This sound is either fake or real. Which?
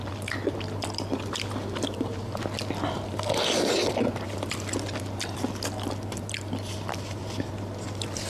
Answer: real